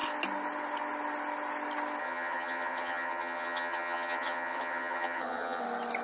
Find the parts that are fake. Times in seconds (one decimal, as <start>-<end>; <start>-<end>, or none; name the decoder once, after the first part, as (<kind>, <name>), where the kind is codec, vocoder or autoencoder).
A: 2.0-5.6 (vocoder, HiFi-GAN)